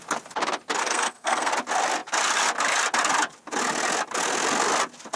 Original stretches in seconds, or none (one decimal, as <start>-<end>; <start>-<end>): 0.0-0.8; 1.5-5.2